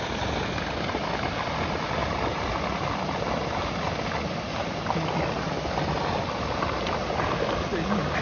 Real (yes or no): yes